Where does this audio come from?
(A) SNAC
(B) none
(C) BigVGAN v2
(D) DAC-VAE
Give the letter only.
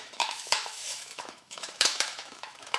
D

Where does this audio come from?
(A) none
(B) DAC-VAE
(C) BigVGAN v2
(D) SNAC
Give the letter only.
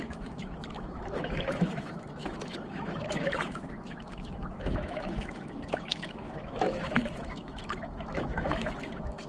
B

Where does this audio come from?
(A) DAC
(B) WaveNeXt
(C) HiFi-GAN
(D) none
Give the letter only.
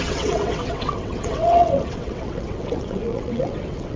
B